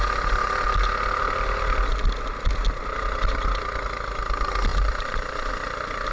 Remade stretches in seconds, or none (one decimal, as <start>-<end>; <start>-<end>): 4.7-5.5